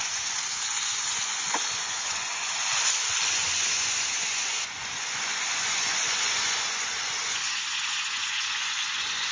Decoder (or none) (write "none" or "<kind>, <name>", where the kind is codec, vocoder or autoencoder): vocoder, Vocos